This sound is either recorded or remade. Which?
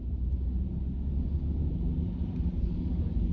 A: recorded